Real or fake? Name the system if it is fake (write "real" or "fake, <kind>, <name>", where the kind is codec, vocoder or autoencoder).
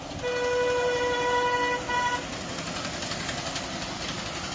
real